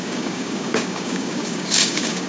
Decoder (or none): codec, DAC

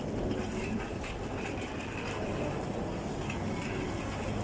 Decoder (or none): none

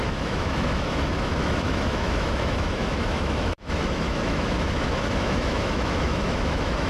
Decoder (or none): autoencoder, DAC-VAE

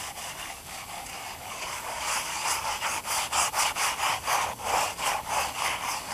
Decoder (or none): codec, DAC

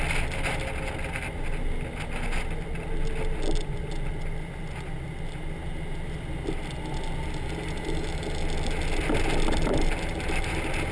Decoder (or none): none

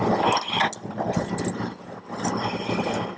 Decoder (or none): none